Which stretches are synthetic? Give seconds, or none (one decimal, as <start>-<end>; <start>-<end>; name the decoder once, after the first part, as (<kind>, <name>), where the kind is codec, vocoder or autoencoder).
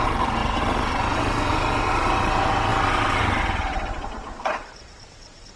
0.0-5.6 (vocoder, WaveNeXt)